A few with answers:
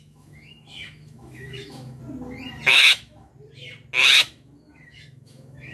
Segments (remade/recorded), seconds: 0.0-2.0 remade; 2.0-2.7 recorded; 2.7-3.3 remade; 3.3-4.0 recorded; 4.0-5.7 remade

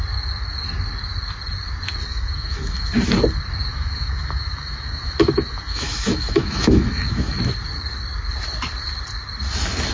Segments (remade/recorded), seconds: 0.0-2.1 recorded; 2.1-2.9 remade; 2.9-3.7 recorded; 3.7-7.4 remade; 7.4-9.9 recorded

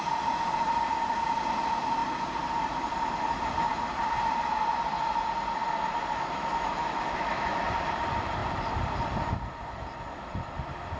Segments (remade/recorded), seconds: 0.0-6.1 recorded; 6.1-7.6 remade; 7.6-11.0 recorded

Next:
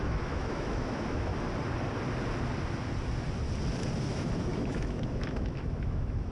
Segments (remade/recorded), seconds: 0.0-1.3 remade; 1.3-4.1 recorded; 4.1-6.3 remade